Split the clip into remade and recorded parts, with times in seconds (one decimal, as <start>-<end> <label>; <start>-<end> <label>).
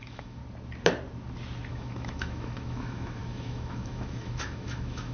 0.0-0.4 remade; 0.4-1.7 recorded; 1.7-5.1 remade